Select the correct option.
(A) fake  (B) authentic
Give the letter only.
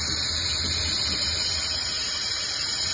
B